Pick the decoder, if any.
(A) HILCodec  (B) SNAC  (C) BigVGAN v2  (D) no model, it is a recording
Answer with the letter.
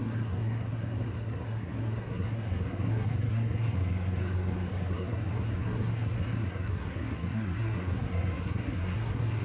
B